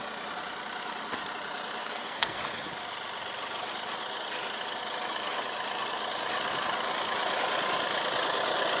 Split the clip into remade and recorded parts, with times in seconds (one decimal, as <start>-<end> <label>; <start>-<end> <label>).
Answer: 0.0-1.8 recorded; 1.8-2.4 remade; 2.4-8.8 recorded